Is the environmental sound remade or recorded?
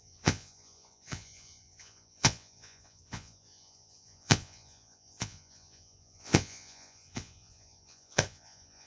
remade